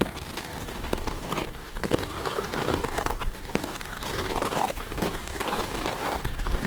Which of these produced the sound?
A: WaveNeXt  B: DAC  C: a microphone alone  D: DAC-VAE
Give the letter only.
B